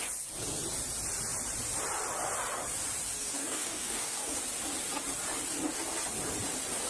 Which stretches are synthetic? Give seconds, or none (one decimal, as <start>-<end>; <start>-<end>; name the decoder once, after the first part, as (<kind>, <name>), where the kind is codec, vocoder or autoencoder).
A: 3.2-4.4 (codec, DAC)